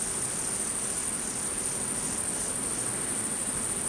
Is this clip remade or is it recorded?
recorded